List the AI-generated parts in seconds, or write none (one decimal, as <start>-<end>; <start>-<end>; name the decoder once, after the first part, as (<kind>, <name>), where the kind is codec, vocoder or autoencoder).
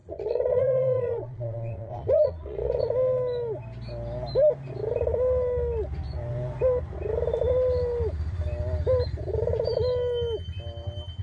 0.0-2.8 (vocoder, Vocos)